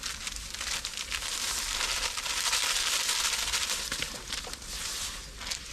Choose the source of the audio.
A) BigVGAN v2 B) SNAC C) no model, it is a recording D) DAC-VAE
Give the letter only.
C